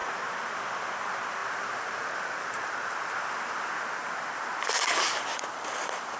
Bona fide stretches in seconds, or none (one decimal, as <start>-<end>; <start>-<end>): none